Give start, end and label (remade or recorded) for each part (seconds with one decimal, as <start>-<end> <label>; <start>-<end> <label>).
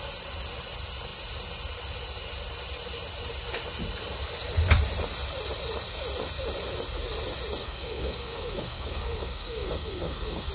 0.0-7.6 recorded; 7.6-10.5 remade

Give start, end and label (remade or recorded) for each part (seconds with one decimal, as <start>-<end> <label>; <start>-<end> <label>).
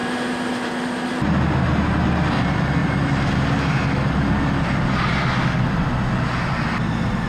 0.0-7.3 recorded